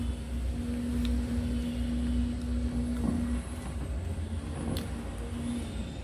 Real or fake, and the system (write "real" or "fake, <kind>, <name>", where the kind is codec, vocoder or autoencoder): real